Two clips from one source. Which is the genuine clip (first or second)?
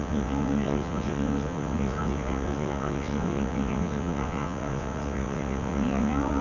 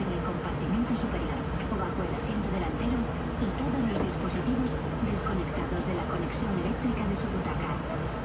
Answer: second